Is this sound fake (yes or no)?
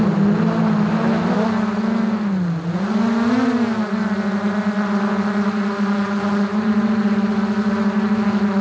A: no